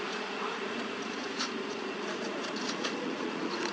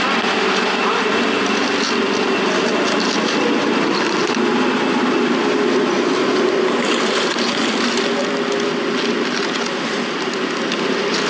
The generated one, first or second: first